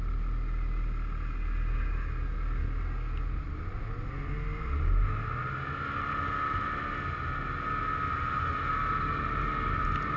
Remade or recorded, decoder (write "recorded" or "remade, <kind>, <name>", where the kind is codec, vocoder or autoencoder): recorded